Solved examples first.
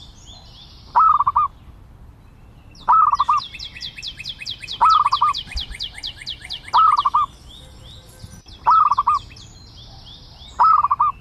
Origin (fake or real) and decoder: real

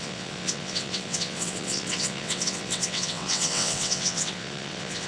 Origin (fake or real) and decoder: fake, vocoder, WaveNeXt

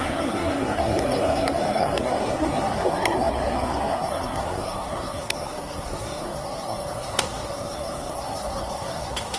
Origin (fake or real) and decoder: fake, codec, SNAC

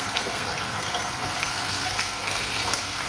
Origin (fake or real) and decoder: fake, codec, SNAC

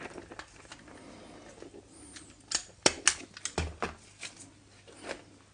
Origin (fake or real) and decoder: real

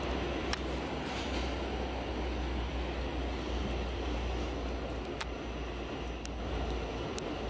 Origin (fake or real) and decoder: real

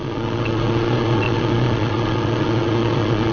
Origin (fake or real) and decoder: fake, vocoder, Vocos